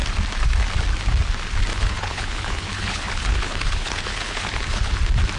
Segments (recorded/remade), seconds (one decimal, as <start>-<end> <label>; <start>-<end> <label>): 0.0-1.7 recorded; 1.7-4.9 remade; 4.9-5.4 recorded